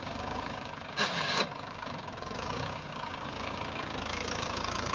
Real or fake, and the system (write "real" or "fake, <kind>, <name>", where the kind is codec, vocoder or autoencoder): fake, codec, DAC